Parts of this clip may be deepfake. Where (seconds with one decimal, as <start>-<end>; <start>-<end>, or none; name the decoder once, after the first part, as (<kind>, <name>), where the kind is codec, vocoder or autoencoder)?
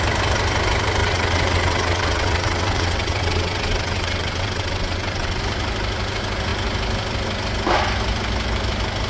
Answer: 1.0-5.4 (vocoder, WaveNeXt)